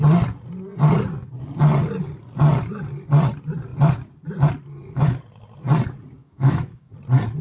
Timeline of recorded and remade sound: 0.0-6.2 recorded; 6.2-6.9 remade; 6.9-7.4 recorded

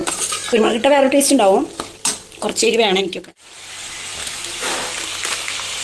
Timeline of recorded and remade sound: 0.0-4.2 recorded; 4.2-4.9 remade; 4.9-5.8 recorded